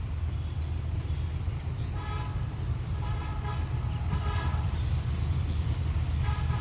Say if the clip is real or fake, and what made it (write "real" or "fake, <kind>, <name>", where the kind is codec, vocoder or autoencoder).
real